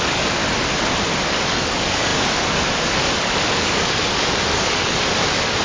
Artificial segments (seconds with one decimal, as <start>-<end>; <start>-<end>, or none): 0.0-0.4; 1.2-5.6